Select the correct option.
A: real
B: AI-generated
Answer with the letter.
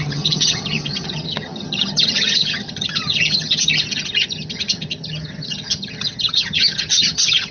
B